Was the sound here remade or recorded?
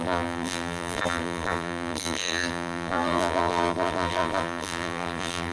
remade